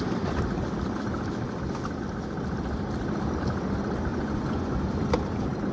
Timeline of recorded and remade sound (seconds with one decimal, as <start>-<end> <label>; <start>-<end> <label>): 0.0-4.1 recorded; 4.1-4.8 remade; 4.8-5.7 recorded